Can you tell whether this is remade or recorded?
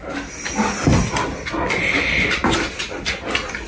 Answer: recorded